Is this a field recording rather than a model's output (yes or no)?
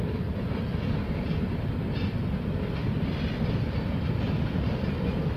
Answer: yes